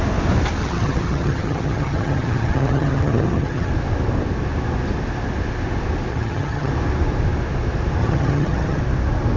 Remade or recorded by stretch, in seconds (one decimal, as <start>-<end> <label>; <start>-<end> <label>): 0.0-0.6 recorded; 0.6-3.7 remade; 3.7-6.1 recorded; 6.1-6.7 remade; 6.7-8.0 recorded; 8.0-8.8 remade; 8.8-9.4 recorded